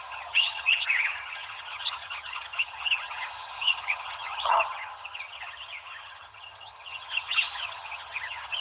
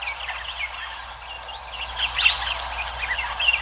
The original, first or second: second